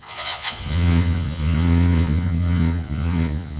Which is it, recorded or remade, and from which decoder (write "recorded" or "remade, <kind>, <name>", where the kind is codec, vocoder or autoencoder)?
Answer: remade, vocoder, Vocos